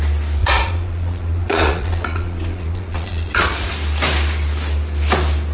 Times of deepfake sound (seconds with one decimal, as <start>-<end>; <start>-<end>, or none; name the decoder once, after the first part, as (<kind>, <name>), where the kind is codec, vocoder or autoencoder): 0.4-3.7 (vocoder, Vocos)